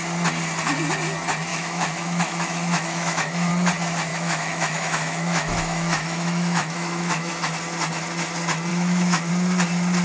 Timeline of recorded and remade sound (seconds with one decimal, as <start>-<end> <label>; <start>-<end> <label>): 0.0-1.5 recorded; 1.5-3.5 remade; 3.5-4.1 recorded; 4.1-7.3 remade; 7.3-8.7 recorded; 8.7-9.3 remade; 9.3-10.0 recorded